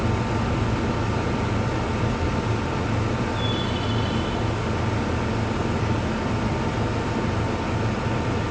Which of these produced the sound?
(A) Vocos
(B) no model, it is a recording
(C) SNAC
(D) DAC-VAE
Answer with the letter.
B